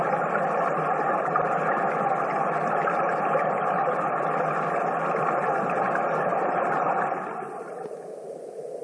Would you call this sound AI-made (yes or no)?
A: no